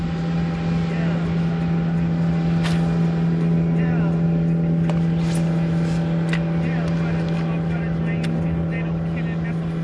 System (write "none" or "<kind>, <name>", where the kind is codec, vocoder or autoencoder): none